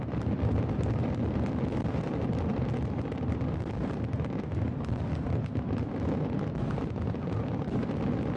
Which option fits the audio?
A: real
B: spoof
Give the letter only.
A